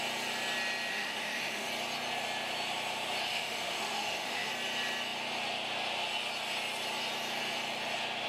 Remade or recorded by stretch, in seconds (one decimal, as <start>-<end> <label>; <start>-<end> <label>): 0.0-0.9 recorded; 0.9-1.7 remade; 1.7-3.3 recorded; 3.3-4.5 remade; 4.5-8.3 recorded